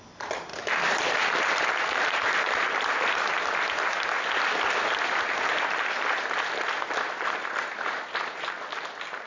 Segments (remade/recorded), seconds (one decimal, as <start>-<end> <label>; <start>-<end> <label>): 0.0-0.5 recorded; 0.5-3.3 remade; 3.3-9.3 recorded